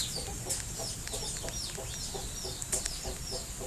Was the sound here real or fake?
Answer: real